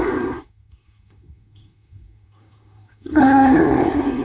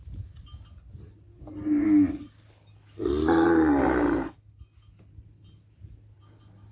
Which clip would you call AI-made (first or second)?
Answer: first